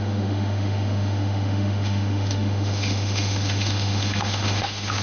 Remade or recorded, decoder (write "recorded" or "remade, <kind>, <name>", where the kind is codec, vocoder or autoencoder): remade, autoencoder, DAC-VAE